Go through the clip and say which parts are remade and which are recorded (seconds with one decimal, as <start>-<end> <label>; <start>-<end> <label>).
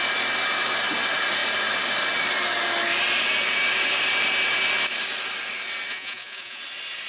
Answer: 0.0-5.9 recorded; 5.9-6.6 remade; 6.6-7.1 recorded